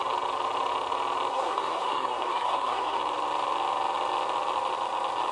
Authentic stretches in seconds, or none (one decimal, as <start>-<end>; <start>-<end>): 0.0-1.3; 3.0-5.3